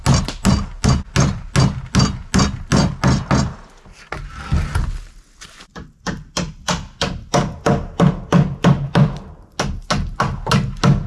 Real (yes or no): yes